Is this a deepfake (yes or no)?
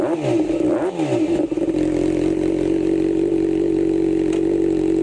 no